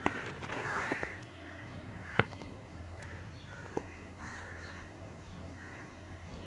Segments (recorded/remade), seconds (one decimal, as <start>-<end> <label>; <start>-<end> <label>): 0.0-0.5 recorded; 0.5-3.0 remade; 3.0-3.7 recorded; 3.7-6.5 remade